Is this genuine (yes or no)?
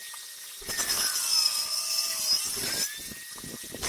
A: yes